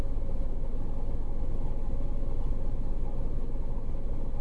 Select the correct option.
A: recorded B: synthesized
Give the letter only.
A